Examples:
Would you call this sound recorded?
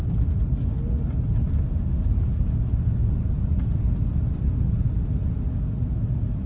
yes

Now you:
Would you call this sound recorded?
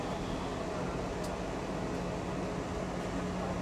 yes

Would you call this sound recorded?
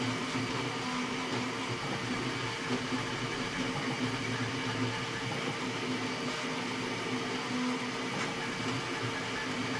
yes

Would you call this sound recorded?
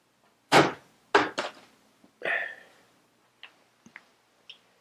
yes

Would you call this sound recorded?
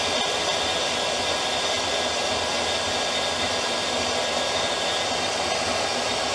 yes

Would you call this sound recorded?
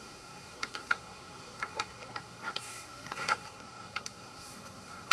no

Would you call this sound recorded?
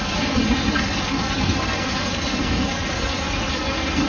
no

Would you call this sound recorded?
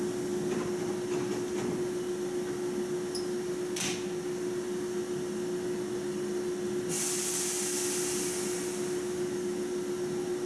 yes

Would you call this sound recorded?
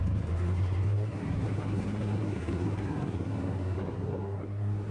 no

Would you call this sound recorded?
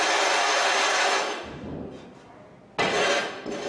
yes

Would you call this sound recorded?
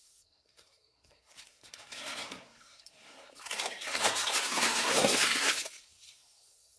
no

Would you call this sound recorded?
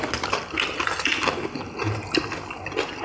yes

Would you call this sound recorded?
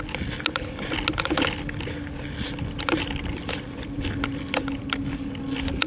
yes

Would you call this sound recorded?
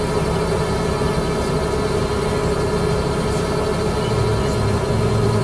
yes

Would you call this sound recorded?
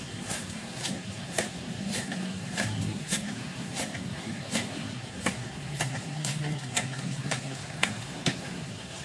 no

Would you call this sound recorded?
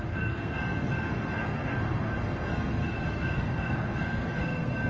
no